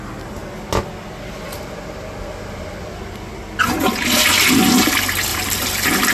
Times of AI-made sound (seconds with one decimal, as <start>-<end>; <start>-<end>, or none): 5.3-6.1